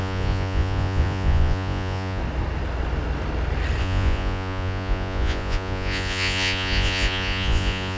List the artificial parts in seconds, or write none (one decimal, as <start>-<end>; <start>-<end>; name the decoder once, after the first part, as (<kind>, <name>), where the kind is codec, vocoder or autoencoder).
0.0-2.2 (vocoder, Vocos); 3.8-8.0